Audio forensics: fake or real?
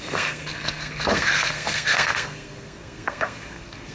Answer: fake